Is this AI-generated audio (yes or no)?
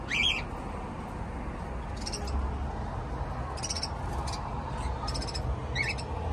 no